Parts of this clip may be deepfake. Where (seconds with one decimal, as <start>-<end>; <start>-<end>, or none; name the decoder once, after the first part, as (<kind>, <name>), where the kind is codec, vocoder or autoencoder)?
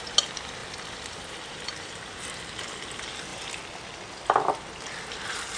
0.6-2.1 (vocoder, BigVGAN v2)